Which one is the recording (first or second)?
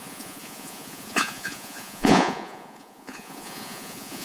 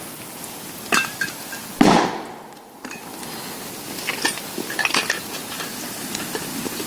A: second